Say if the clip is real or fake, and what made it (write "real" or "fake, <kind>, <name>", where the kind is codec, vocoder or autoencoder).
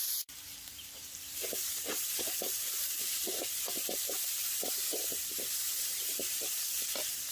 fake, vocoder, BigVGAN v2